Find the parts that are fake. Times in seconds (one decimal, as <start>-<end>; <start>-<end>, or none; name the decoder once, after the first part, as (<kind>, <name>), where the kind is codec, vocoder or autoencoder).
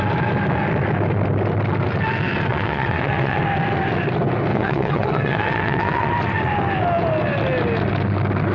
2.5-3.4 (vocoder, WaveNeXt); 4.5-6.1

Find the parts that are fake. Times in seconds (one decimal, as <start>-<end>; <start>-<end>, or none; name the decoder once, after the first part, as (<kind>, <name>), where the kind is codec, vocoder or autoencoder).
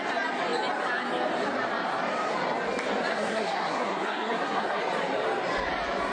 3.1-4.8 (codec, SNAC)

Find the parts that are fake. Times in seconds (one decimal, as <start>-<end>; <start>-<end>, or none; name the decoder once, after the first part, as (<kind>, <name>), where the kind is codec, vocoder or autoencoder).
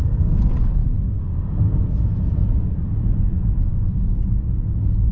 none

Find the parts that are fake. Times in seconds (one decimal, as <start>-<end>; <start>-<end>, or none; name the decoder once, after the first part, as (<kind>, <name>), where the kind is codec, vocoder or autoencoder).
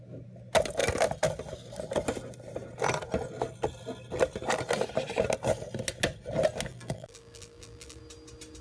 6.7-8.0 (vocoder, BigVGAN v2)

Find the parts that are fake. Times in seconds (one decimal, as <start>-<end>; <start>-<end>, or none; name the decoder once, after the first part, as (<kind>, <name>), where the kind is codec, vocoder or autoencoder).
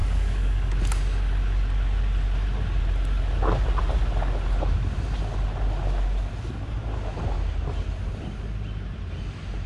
0.0-0.7 (codec, DAC)